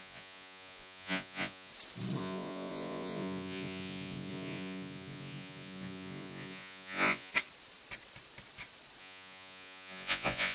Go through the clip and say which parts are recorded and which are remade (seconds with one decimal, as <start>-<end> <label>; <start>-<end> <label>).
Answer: 0.0-1.7 remade; 1.7-2.2 recorded; 2.2-7.3 remade; 7.3-9.0 recorded; 9.0-10.5 remade